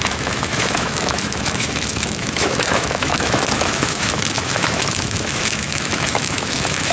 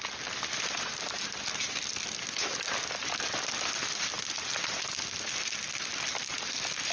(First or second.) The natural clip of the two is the second